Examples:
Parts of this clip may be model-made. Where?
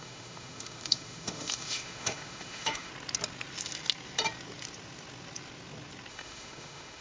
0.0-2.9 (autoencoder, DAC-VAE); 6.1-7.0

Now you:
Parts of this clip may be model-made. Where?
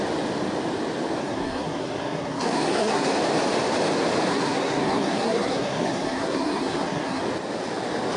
1.2-3.1 (codec, SNAC); 4.3-7.2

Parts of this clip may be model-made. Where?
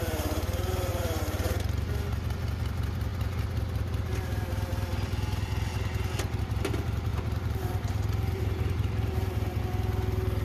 0.9-1.6 (vocoder, BigVGAN v2); 7.1-9.6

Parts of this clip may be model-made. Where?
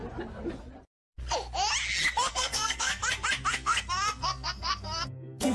2.3-3.0 (codec, SNAC); 3.5-5.5